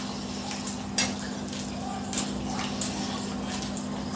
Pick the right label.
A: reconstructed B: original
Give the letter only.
B